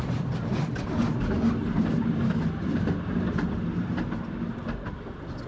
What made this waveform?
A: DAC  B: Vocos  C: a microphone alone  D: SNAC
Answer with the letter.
C